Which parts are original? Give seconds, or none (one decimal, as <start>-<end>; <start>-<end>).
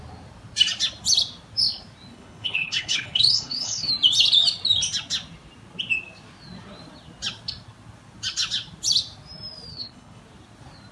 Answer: 0.0-2.1; 3.9-9.7; 10.2-10.9